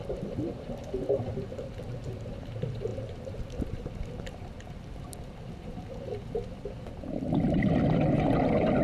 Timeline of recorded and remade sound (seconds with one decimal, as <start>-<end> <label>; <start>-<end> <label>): 0.0-8.8 remade